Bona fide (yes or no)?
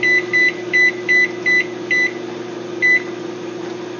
yes